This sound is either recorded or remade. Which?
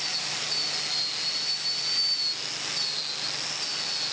recorded